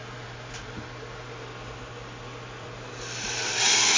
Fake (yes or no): no